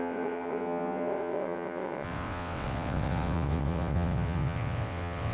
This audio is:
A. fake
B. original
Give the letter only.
A